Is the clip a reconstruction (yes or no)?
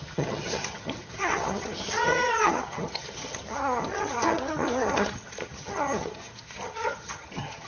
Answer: yes